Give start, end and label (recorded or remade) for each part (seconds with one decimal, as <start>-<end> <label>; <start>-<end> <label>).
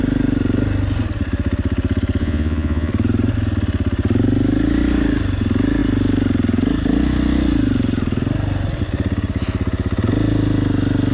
0.0-2.2 recorded; 2.2-2.9 remade; 2.9-11.1 recorded